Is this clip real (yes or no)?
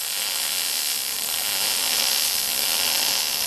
yes